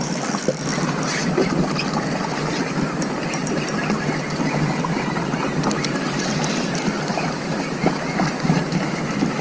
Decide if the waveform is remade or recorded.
recorded